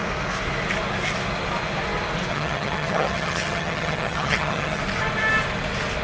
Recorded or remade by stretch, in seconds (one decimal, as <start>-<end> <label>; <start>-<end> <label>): 0.0-2.3 recorded; 2.3-4.8 remade; 4.8-6.0 recorded